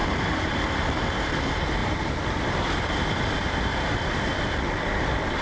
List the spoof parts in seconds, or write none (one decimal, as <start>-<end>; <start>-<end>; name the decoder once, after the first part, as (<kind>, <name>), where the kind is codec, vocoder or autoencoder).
0.0-0.6 (vocoder, BigVGAN v2); 1.8-5.0